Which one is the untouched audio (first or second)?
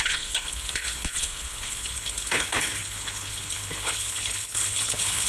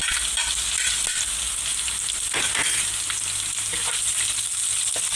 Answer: second